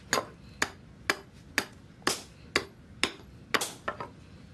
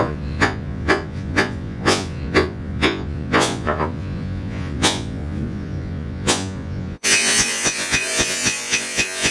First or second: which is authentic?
first